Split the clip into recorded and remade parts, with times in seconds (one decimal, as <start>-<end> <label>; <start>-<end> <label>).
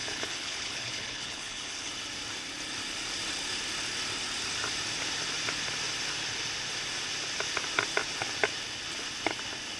0.0-1.9 remade; 1.9-9.8 recorded